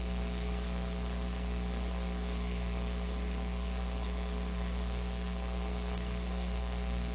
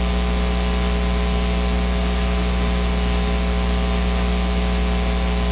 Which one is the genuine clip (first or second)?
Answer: second